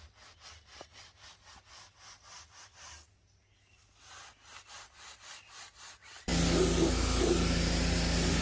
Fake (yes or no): no